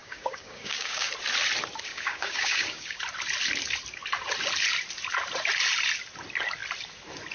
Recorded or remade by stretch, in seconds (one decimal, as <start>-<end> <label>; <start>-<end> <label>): 0.0-1.1 remade; 1.1-1.9 recorded; 1.9-3.0 remade; 3.0-7.3 recorded